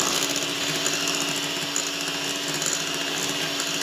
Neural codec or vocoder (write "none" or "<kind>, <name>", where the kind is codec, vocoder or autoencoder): none